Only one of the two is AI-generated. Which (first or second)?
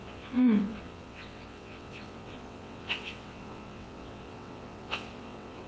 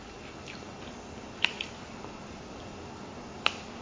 first